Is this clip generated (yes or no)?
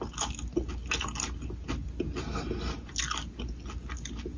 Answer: no